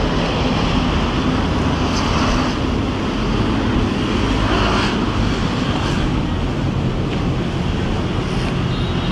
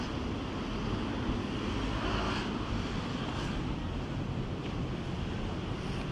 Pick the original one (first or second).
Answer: first